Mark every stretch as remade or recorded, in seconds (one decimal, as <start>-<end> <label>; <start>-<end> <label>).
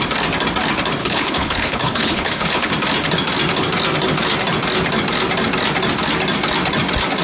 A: 0.0-1.0 recorded; 1.0-2.7 remade; 2.7-7.2 recorded